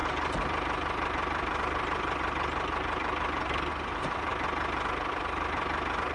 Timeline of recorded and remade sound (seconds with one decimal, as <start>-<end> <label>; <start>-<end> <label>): 0.0-6.1 recorded